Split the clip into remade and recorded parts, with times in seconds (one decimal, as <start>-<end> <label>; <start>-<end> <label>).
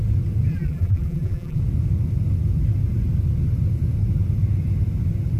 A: 0.0-0.5 recorded; 0.5-1.6 remade; 1.6-5.4 recorded